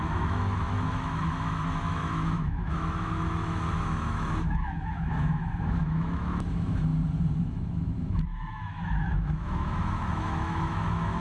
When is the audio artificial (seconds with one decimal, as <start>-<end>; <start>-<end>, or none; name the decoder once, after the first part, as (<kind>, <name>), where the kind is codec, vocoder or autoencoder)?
0.0-6.9 (autoencoder, DAC-VAE); 7.4-11.2